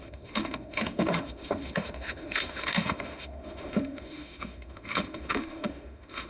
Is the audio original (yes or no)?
no